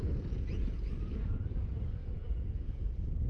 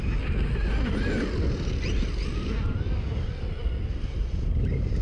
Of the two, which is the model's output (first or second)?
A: first